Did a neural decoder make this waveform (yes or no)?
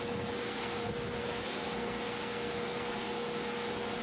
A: yes